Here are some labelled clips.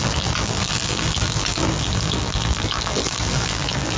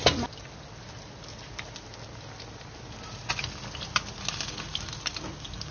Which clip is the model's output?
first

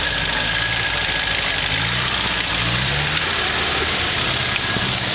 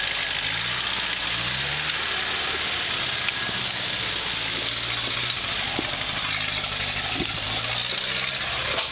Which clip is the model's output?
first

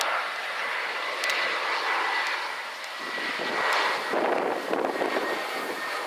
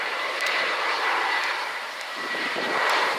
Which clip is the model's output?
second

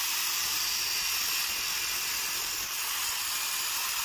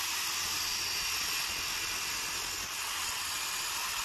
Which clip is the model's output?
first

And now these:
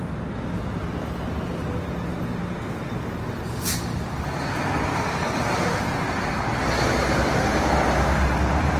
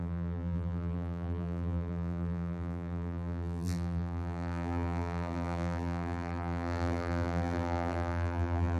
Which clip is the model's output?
second